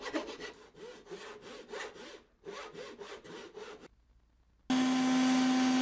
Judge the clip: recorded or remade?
recorded